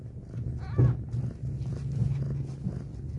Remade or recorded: recorded